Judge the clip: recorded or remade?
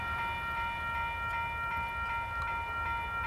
recorded